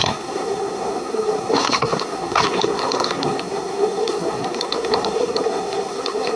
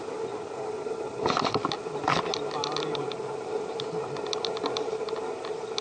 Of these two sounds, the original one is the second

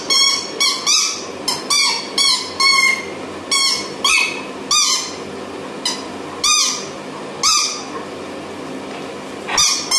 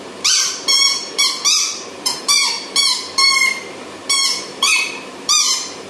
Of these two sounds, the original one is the first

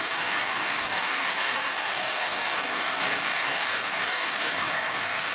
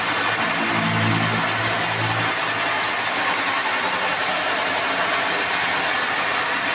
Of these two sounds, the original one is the second